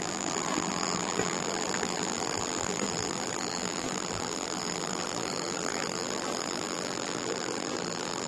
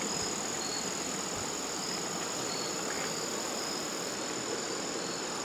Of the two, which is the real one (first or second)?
second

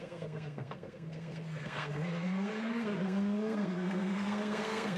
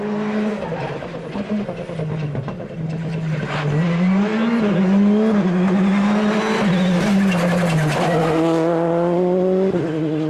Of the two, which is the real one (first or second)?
second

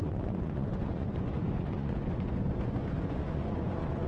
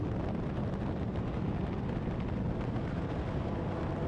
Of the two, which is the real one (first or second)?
second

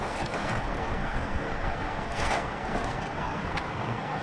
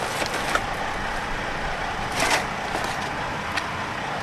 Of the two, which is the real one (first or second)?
second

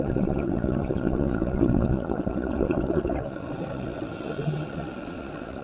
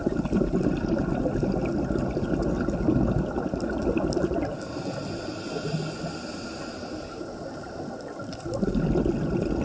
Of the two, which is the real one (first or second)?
second